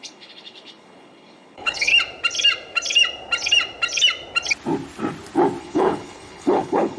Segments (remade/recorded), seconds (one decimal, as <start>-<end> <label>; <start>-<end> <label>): 0.0-1.9 remade; 1.9-5.6 recorded; 5.6-7.0 remade